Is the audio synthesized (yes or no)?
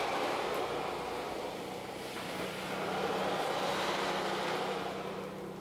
no